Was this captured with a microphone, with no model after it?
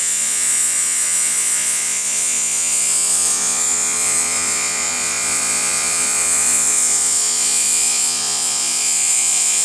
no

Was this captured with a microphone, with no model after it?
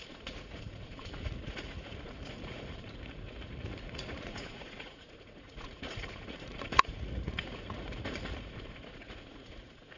no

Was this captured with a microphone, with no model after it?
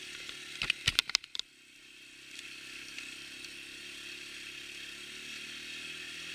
yes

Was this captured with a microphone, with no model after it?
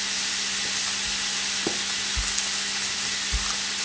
yes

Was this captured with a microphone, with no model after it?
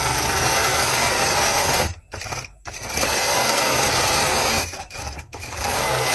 no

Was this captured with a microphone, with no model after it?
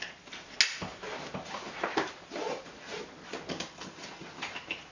yes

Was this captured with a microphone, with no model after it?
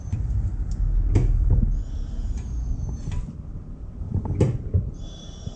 yes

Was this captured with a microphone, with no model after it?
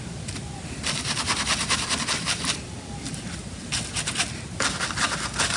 yes